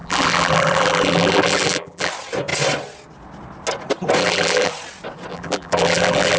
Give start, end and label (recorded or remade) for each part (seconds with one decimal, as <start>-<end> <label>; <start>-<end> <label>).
0.0-2.1 remade; 2.1-4.2 recorded; 4.2-4.7 remade; 4.7-5.3 recorded; 5.3-6.4 remade